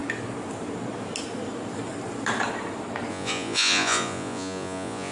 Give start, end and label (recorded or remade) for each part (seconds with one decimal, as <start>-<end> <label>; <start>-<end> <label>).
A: 0.0-3.1 recorded; 3.1-5.1 remade